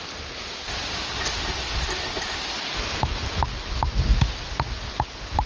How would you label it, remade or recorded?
recorded